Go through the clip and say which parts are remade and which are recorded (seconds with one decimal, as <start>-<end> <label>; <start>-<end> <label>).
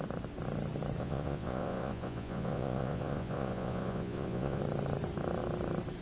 0.0-1.0 recorded; 1.0-4.6 remade; 4.6-6.0 recorded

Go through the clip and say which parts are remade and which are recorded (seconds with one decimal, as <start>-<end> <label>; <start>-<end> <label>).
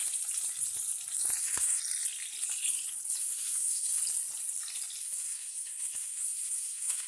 0.0-1.4 recorded; 1.4-1.8 remade; 1.8-3.2 recorded; 3.2-4.0 remade; 4.0-5.0 recorded; 5.0-7.1 remade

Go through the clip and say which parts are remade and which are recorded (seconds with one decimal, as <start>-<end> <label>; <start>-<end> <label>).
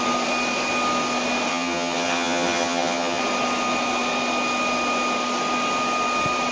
0.0-1.5 recorded; 1.5-3.2 remade; 3.2-6.5 recorded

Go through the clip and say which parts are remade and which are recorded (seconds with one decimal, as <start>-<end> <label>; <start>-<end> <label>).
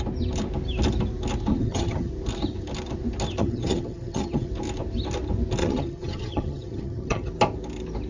0.0-1.5 recorded; 1.5-2.1 remade; 2.1-3.4 recorded; 3.4-4.5 remade; 4.5-5.6 recorded; 5.6-7.3 remade; 7.3-8.1 recorded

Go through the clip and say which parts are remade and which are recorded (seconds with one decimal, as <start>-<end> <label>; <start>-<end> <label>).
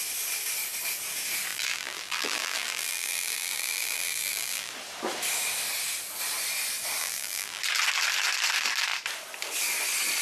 0.0-1.5 recorded; 1.5-4.7 remade; 4.7-7.0 recorded; 7.0-7.6 remade; 7.6-10.2 recorded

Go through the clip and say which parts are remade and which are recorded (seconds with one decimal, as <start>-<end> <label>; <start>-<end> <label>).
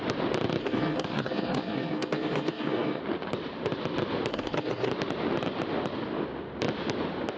0.0-0.6 recorded; 0.6-3.0 remade; 3.0-4.3 recorded; 4.3-4.9 remade; 4.9-7.4 recorded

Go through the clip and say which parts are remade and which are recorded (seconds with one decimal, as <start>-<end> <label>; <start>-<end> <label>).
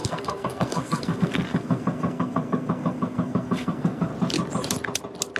0.0-4.1 remade; 4.1-5.4 recorded